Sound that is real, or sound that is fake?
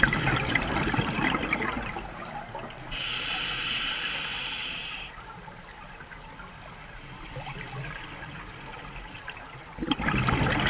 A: real